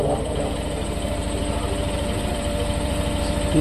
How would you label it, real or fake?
fake